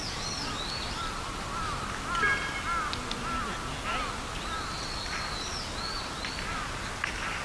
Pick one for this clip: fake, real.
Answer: real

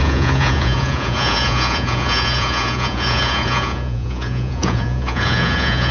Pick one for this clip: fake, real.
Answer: fake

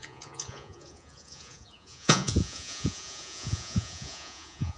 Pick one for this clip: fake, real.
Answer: fake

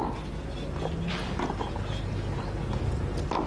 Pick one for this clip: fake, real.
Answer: real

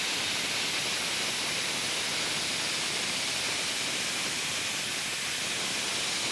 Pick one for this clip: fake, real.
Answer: real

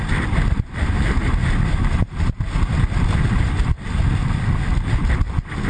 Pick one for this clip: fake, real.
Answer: real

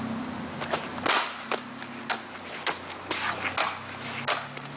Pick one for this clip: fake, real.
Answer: real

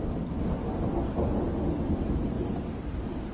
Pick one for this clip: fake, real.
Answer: real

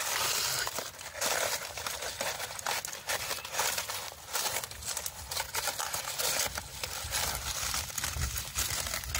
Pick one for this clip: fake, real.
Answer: real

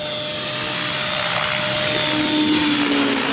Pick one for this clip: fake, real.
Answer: real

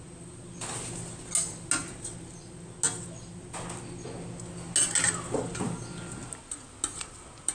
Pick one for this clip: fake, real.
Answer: real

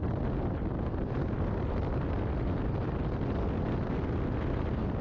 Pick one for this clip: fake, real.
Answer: real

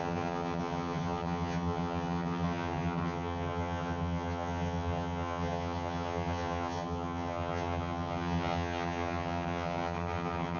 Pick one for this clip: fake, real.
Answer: fake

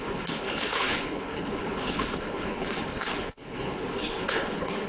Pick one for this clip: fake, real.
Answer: fake